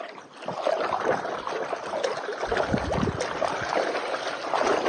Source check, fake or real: fake